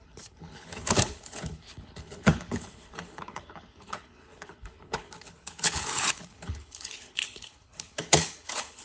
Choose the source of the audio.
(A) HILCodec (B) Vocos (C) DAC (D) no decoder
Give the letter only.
A